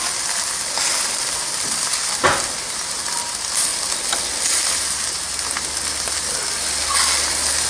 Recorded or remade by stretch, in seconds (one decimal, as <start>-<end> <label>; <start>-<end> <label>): 0.0-7.7 recorded